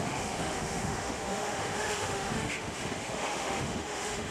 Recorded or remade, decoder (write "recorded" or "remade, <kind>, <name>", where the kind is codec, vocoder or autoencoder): remade, autoencoder, DAC-VAE